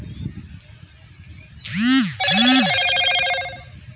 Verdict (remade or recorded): recorded